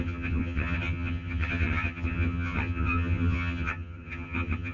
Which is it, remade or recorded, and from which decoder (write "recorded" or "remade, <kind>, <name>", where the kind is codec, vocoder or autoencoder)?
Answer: remade, vocoder, HiFi-GAN